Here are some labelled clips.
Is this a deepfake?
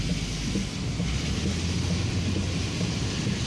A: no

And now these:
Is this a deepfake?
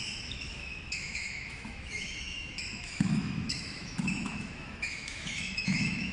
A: yes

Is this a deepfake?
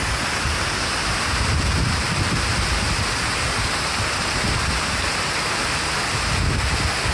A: no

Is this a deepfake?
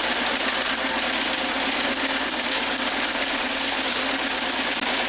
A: no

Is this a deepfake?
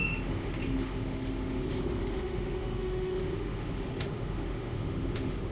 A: yes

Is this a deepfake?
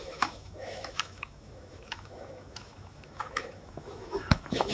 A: yes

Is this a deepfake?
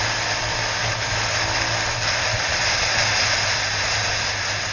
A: no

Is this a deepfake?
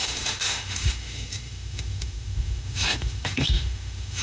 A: yes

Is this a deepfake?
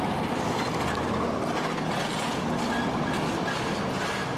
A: no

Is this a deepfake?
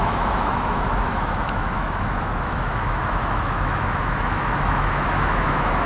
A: yes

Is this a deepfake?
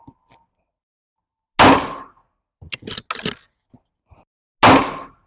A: no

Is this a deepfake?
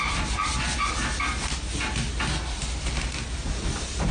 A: no